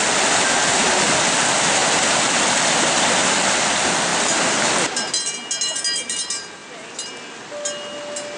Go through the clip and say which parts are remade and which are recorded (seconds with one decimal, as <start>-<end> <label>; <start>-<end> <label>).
0.0-8.4 recorded